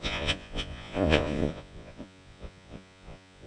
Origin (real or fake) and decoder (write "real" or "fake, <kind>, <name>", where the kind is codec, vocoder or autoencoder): fake, vocoder, Vocos